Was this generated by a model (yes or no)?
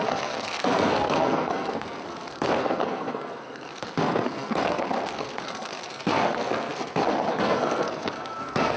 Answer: yes